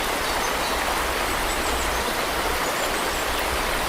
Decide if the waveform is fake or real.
real